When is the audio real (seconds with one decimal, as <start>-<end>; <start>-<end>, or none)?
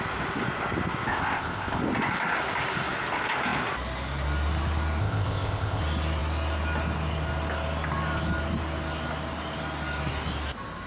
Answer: 0.0-1.1; 1.8-5.0; 5.8-10.9